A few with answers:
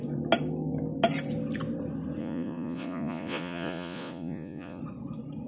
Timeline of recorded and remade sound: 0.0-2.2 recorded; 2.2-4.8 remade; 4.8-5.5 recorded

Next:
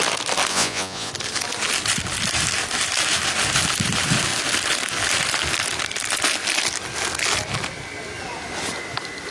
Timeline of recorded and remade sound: 0.0-0.5 recorded; 0.5-1.1 remade; 1.1-9.3 recorded

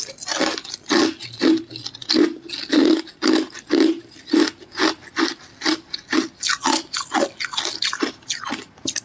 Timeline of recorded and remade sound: 0.0-9.0 recorded

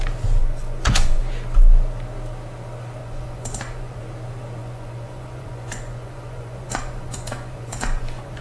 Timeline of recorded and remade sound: 0.0-0.4 recorded; 0.4-1.2 remade; 1.2-3.0 recorded; 3.0-4.0 remade; 4.0-4.6 recorded; 4.6-8.4 remade

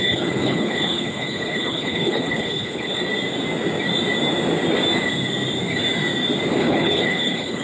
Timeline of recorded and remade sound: 0.0-3.0 remade; 3.0-6.6 recorded; 6.6-7.6 remade

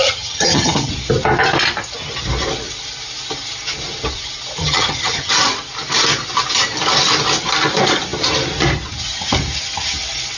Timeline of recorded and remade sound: 0.0-0.9 remade; 0.9-4.6 recorded; 4.6-5.3 remade; 5.3-10.4 recorded

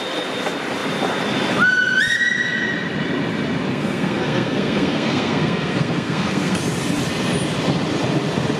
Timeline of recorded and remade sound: 0.0-3.7 recorded; 3.7-6.6 remade; 6.6-8.6 recorded